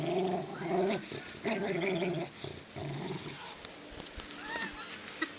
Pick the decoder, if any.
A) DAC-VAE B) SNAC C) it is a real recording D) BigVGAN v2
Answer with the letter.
C